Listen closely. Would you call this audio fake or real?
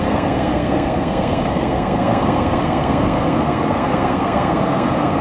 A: fake